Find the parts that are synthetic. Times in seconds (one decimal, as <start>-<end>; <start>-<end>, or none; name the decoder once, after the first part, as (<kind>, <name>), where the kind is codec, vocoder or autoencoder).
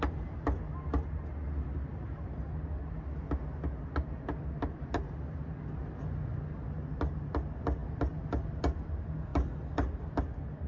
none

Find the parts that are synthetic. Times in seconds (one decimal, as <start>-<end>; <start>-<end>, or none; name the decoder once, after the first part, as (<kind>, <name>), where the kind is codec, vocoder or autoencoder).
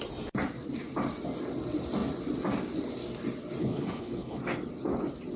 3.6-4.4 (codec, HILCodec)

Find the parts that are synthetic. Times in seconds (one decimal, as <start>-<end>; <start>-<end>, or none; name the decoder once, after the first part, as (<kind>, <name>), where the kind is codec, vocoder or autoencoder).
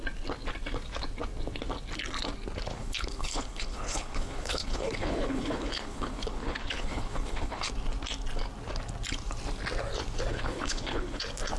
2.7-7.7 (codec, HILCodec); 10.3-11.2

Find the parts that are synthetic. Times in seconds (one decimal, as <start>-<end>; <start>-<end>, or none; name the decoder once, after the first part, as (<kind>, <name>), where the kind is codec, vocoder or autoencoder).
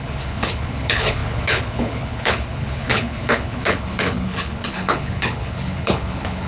0.0-6.5 (codec, HILCodec)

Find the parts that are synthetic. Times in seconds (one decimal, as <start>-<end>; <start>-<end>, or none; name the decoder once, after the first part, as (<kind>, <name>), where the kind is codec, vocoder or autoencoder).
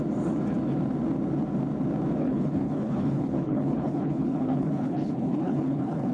2.2-6.1 (codec, HILCodec)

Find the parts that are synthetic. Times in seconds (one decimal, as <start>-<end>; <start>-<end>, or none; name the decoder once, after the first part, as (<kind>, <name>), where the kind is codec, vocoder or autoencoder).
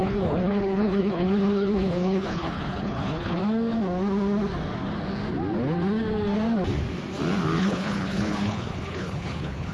0.0-3.4 (codec, HILCodec); 7.6-9.7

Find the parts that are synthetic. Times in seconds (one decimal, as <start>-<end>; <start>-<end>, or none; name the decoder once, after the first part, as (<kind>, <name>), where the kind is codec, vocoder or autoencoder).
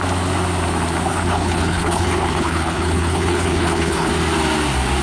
1.1-4.1 (codec, HILCodec)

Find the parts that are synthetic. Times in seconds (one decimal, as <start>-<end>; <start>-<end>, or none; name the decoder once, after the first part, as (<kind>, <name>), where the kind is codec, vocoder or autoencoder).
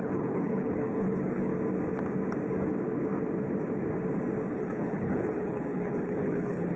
0.0-1.5 (codec, HILCodec); 4.5-6.8